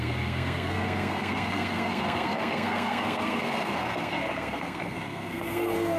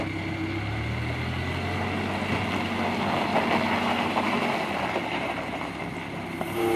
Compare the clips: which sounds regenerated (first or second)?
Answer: first